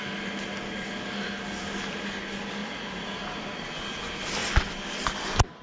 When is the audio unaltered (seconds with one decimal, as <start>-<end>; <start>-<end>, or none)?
0.0-2.6; 3.4-5.6